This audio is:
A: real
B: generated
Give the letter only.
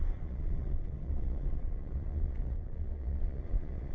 B